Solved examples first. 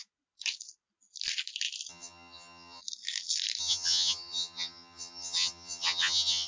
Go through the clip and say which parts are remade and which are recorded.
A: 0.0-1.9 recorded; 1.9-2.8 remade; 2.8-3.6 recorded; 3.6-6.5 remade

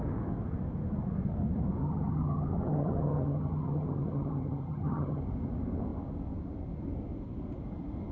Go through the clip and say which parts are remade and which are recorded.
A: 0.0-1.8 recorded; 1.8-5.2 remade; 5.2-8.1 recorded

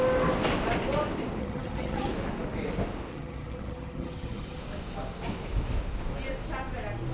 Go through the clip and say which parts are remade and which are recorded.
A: 0.0-1.4 recorded; 1.4-2.1 remade; 2.1-3.1 recorded; 3.1-4.6 remade; 4.6-7.1 recorded